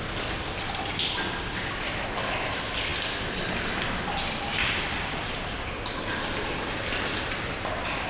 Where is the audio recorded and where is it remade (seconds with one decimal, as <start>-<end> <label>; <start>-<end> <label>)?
0.0-8.1 recorded